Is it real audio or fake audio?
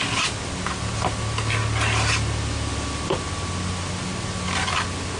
real